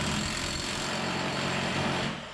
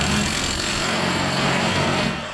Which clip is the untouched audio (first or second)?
first